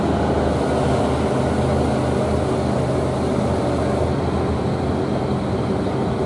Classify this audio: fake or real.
real